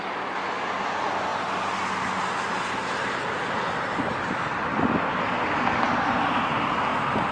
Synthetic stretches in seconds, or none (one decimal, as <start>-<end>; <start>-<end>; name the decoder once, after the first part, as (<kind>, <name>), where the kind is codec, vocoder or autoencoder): none